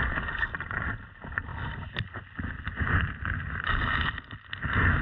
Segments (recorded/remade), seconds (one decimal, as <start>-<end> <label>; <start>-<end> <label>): 0.0-5.0 recorded